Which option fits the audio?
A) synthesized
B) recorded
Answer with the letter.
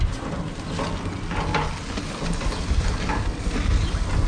B